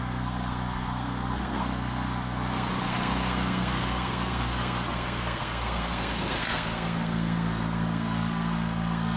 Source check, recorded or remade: remade